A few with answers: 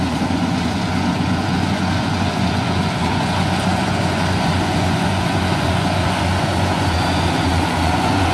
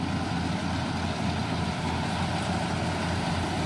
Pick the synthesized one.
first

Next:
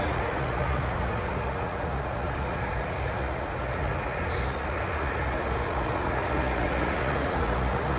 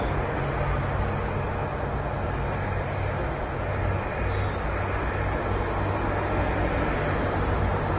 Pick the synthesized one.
first